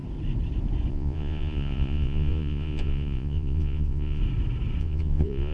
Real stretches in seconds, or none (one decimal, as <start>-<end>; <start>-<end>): 0.0-0.9; 4.2-4.8